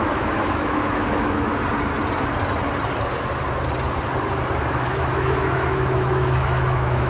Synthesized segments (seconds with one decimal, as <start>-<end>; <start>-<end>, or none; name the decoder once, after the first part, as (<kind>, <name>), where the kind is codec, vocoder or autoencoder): 0.0-1.5 (autoencoder, DAC-VAE); 4.7-7.1